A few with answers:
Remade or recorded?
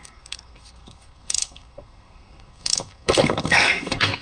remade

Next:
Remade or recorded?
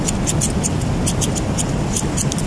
recorded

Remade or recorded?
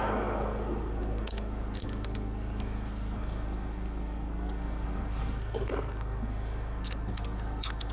remade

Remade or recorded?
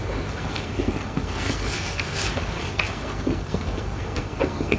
remade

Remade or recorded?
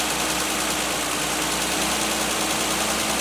recorded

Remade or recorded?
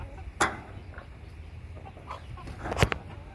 recorded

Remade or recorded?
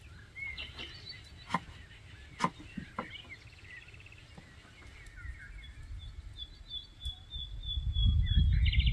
recorded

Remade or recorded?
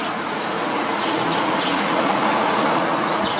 remade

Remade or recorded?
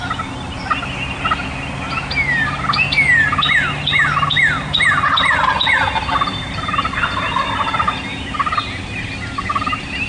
recorded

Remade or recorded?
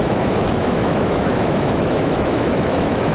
remade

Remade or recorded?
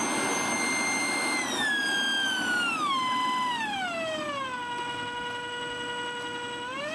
recorded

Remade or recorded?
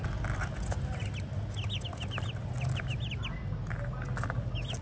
recorded